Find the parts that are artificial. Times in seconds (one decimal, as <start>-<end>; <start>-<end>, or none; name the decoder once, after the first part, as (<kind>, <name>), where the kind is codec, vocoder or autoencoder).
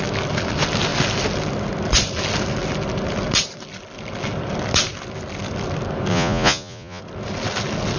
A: 6.1-7.0 (vocoder, Vocos)